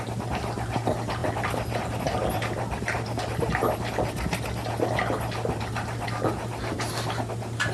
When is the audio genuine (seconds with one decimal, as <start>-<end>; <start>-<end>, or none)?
0.0-7.7

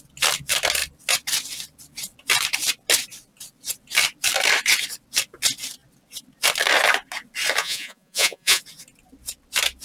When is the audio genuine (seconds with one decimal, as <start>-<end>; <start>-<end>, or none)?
0.0-7.6; 8.6-9.8

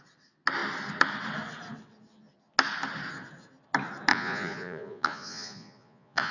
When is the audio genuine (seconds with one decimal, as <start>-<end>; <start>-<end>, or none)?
0.0-4.1

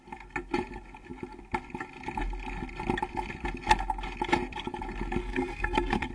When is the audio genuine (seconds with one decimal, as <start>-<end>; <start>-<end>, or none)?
0.0-5.2